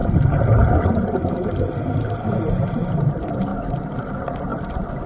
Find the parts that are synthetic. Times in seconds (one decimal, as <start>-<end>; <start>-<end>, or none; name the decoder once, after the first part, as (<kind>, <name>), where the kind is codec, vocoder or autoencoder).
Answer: none